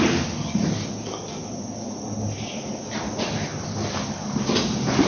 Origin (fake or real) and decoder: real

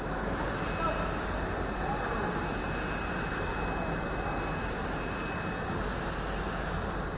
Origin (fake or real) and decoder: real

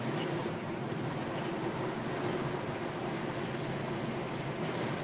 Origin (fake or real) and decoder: real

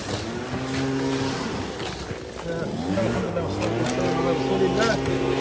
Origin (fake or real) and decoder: real